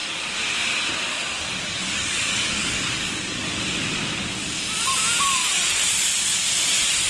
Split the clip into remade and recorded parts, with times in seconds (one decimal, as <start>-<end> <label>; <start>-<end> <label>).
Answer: 0.0-1.1 recorded; 1.1-3.6 remade; 3.6-7.1 recorded